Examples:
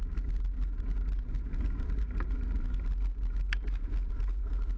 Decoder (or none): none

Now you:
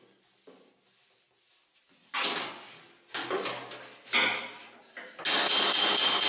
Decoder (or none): none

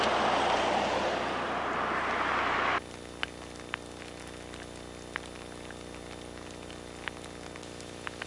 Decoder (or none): none